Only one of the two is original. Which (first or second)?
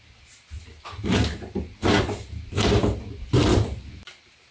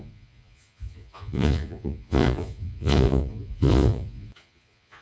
first